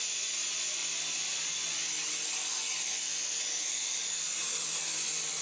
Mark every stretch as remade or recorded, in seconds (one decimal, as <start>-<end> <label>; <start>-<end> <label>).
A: 0.0-4.4 remade; 4.4-5.0 recorded; 5.0-5.4 remade